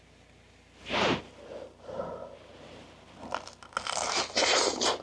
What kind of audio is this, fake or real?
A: real